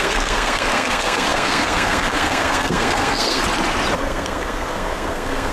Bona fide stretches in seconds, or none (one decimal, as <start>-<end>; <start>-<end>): 3.4-3.9